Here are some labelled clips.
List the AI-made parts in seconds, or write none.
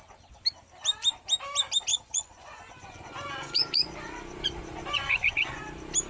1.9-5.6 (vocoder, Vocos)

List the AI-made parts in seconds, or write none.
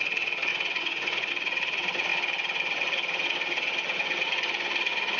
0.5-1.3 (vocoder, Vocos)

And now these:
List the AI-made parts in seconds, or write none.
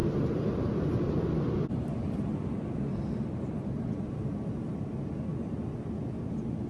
none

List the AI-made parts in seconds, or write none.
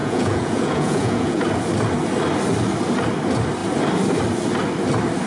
0.0-1.4 (vocoder, Vocos)